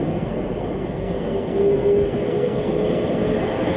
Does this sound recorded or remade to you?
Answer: remade